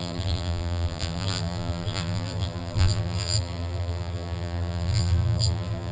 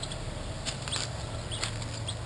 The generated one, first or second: first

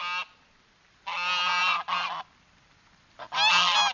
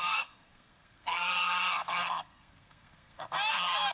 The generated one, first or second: second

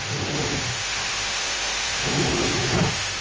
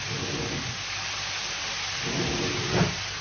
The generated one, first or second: first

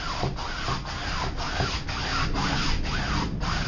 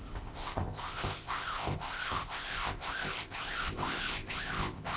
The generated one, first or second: second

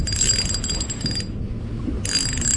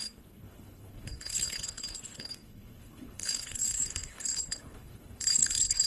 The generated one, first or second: second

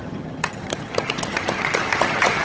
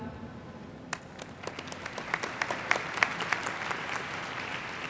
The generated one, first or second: first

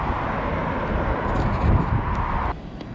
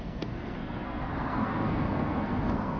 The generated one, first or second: second